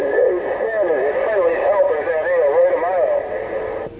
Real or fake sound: real